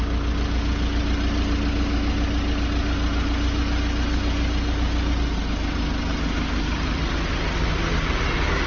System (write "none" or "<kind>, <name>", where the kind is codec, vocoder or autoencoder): none